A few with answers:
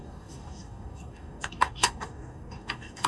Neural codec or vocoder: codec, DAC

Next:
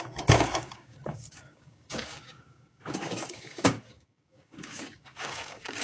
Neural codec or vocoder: codec, DAC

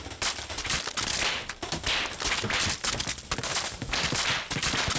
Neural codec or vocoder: none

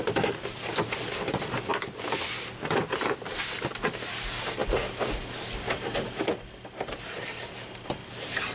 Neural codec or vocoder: none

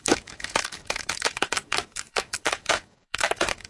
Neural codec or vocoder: codec, DAC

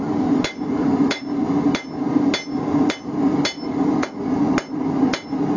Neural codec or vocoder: none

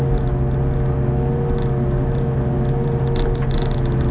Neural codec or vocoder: none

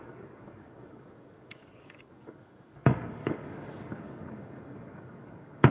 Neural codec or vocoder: codec, DAC